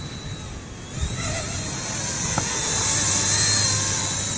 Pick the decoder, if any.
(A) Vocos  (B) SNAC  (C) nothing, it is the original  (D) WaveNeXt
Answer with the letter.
C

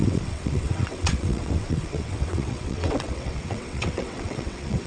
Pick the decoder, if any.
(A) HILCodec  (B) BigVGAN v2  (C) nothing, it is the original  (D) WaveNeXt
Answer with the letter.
D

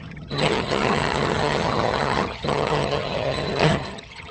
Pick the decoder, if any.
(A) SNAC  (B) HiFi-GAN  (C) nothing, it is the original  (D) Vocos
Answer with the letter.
B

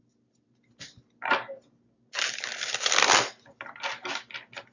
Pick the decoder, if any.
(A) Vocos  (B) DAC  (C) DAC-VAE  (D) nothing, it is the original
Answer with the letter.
D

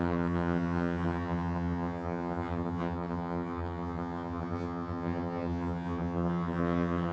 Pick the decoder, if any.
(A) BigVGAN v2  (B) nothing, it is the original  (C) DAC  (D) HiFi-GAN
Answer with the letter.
D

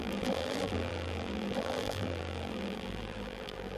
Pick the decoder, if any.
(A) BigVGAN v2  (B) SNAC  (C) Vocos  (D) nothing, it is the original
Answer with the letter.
A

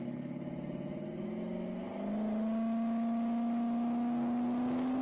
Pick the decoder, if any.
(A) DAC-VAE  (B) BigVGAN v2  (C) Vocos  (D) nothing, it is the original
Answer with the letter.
D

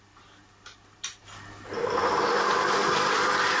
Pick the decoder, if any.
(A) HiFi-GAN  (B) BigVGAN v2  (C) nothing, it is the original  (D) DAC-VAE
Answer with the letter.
C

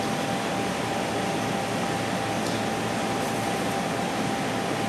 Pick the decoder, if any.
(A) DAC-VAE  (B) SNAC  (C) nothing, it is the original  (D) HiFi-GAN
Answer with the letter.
C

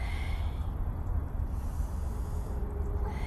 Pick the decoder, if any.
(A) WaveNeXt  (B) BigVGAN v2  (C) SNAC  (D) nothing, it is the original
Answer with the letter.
D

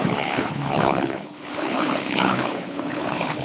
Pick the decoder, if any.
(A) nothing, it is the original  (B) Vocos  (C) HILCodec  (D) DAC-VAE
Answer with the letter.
C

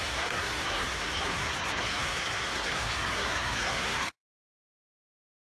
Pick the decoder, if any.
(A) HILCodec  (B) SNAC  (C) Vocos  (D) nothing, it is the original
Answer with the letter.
B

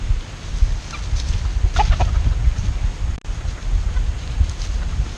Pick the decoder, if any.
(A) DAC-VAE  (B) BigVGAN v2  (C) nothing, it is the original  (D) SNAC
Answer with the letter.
C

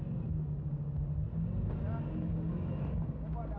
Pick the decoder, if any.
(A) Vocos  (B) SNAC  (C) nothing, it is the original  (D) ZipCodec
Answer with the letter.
C